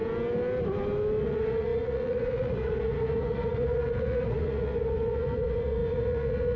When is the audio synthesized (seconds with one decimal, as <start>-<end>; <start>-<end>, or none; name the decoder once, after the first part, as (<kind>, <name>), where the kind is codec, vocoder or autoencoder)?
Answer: 1.2-6.6 (vocoder, Vocos)